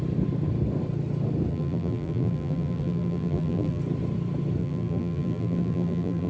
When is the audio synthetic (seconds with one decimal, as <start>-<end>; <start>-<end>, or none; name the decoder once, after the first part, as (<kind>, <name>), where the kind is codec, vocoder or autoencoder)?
1.5-3.8 (vocoder, BigVGAN v2); 4.6-6.3